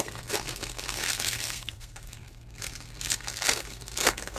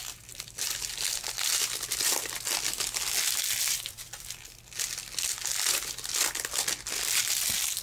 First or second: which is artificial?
first